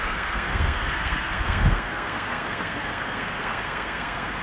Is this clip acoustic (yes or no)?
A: no